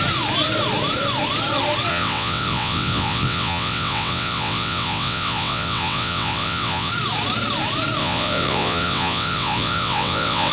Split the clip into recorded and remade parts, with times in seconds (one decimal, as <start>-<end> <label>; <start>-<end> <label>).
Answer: 0.0-1.9 recorded; 1.9-6.9 remade; 6.9-8.0 recorded; 8.0-10.5 remade